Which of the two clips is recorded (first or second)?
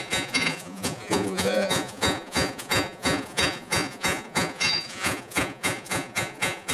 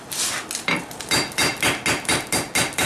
second